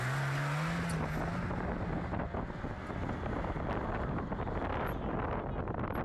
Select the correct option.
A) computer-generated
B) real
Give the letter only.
B